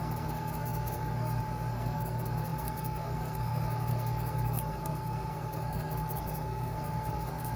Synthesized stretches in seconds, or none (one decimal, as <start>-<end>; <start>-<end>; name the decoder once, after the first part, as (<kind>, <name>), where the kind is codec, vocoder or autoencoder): 0.0-7.6 (codec, SNAC)